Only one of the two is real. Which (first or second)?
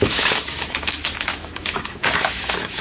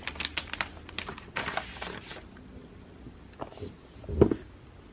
second